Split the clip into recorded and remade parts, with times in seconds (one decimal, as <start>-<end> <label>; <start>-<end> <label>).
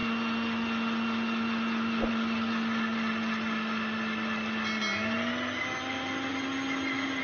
0.0-7.2 recorded